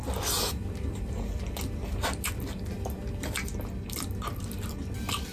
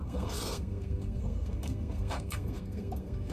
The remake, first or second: second